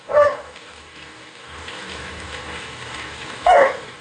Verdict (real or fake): fake